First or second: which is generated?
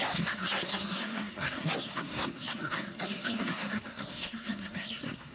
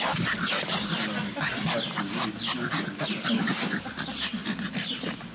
first